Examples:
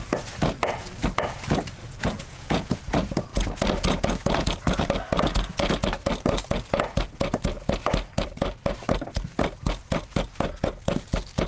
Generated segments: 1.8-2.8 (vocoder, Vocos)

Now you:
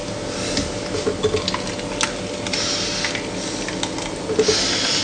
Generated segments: none

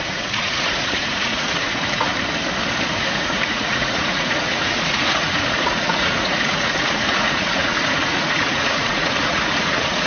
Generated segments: 0.0-2.1 (vocoder, Vocos); 2.9-10.1

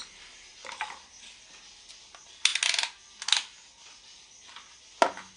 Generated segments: none

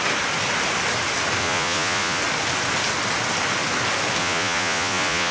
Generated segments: 1.4-2.2 (vocoder, Vocos); 4.2-5.3

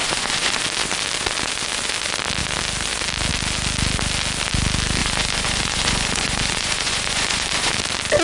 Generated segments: 0.0-0.6 (vocoder, Vocos); 5.0-7.7

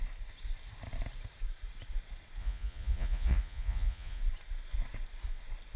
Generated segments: 2.4-4.2 (vocoder, Vocos)

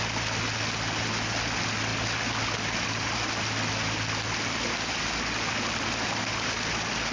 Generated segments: none